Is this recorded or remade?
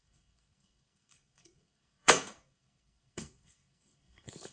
remade